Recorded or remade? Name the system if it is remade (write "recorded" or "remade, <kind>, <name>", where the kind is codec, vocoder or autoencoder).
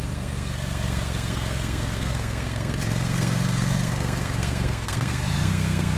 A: remade, codec, SNAC